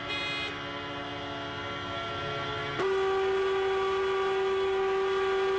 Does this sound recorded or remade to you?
recorded